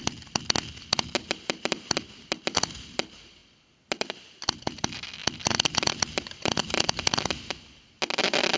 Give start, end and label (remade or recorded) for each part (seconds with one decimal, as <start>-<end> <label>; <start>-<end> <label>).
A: 0.0-8.6 recorded